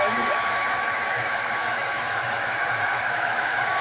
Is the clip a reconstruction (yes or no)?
yes